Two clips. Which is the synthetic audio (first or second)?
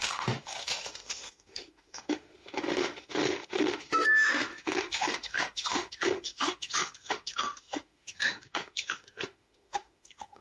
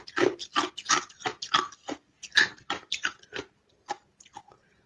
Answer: first